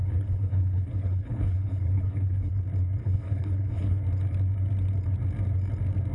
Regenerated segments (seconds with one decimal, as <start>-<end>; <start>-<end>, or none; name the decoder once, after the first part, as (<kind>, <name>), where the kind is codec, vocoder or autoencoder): 0.0-2.5 (codec, HILCodec); 3.0-4.0